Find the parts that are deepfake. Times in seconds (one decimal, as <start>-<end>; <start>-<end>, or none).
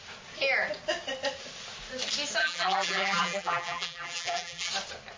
2.4-4.7